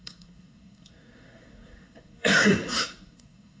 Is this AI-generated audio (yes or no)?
yes